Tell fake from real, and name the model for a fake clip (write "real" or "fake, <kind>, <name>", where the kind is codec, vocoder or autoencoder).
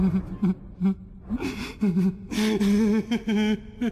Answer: real